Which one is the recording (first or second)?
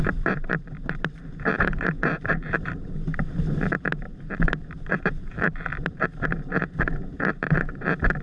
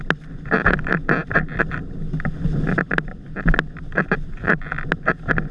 second